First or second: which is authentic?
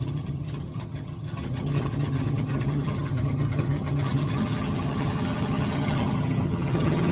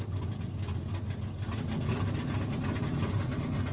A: second